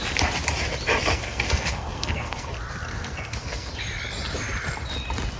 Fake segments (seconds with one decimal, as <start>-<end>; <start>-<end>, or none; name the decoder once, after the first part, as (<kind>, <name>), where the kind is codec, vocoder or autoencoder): 1.1-2.5 (codec, SNAC); 2.9-3.7